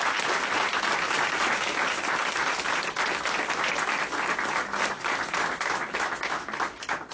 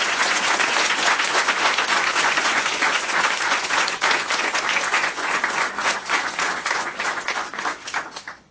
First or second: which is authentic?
first